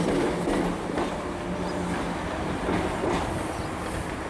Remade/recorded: recorded